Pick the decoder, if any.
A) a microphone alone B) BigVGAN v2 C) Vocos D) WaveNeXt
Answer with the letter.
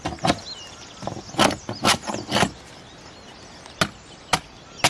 A